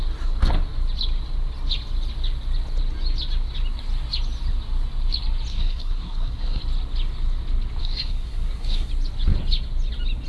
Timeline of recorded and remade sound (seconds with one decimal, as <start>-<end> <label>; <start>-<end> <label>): 0.0-5.5 recorded; 5.5-6.6 remade; 6.6-7.8 recorded; 7.8-8.9 remade; 8.9-10.3 recorded